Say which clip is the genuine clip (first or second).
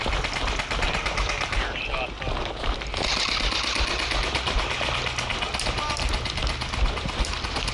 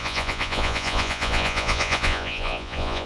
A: first